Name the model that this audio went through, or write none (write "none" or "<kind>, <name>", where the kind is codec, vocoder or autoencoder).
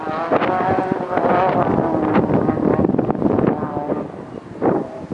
none